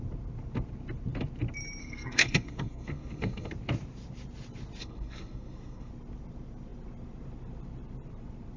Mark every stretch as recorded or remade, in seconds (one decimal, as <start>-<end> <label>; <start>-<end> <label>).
0.0-1.8 recorded; 1.8-3.5 remade; 3.5-4.8 recorded; 4.8-5.9 remade; 5.9-8.6 recorded